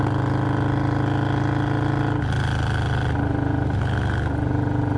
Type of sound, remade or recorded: recorded